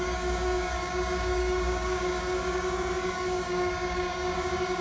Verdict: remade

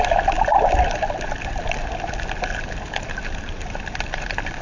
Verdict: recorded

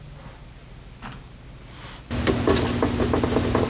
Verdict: recorded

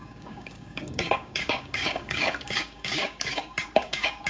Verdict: remade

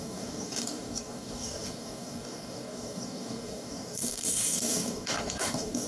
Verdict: remade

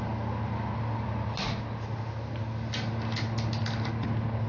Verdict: recorded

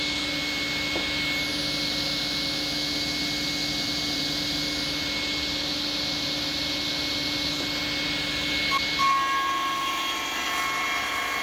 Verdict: recorded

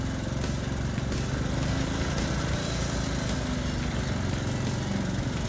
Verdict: recorded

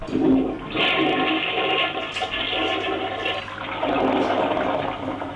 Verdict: recorded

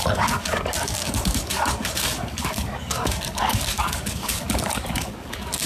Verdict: remade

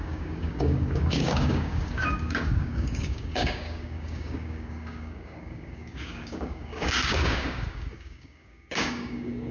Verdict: remade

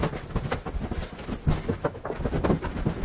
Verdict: recorded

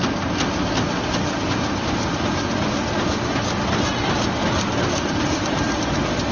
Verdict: recorded